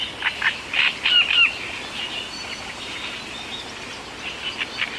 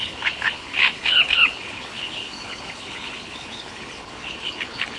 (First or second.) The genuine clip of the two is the first